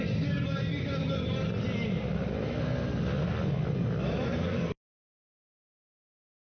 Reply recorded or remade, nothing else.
recorded